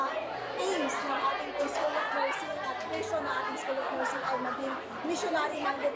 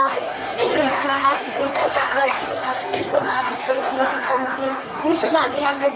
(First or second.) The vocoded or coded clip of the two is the second